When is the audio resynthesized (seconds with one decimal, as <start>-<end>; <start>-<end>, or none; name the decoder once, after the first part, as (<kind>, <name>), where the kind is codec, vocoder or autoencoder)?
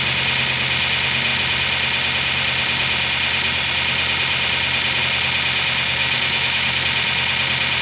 6.0-6.8 (autoencoder, DAC-VAE)